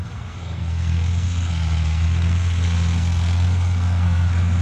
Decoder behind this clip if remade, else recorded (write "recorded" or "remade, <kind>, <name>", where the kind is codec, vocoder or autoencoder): remade, codec, SNAC